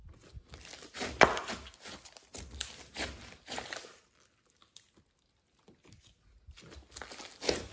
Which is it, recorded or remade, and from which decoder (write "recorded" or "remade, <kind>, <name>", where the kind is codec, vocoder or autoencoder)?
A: recorded